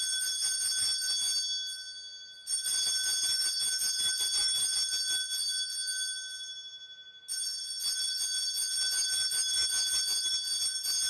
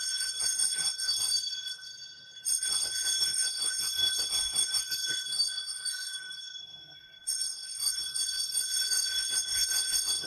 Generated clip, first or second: second